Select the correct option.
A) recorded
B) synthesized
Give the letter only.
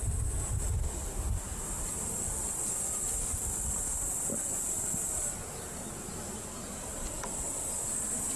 A